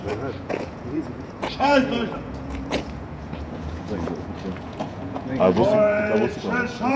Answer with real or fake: fake